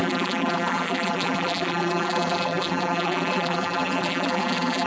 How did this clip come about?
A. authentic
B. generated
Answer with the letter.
B